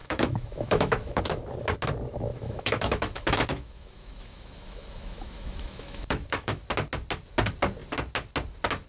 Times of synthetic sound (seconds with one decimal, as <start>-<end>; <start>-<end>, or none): 0.0-1.2; 2.3-6.6